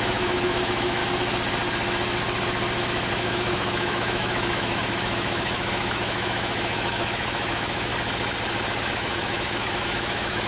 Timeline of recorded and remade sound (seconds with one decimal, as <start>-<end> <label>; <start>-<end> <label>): 0.0-1.0 remade; 1.0-3.1 recorded; 3.1-7.9 remade; 7.9-8.8 recorded; 8.8-10.5 remade